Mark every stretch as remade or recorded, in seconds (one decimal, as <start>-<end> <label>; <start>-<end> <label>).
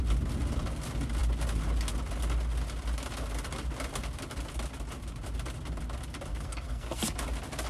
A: 0.0-6.3 recorded; 6.3-7.0 remade; 7.0-7.7 recorded